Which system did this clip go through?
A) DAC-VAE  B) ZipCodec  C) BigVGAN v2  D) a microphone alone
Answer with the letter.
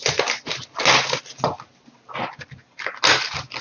D